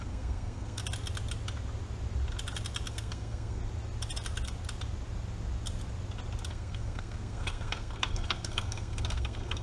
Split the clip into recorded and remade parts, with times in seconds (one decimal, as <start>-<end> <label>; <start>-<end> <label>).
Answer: 0.0-0.8 remade; 0.8-2.9 recorded; 2.9-3.6 remade; 3.6-6.5 recorded; 6.5-9.6 remade